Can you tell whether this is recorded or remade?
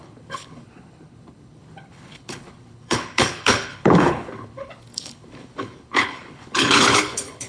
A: remade